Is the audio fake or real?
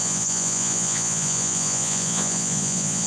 fake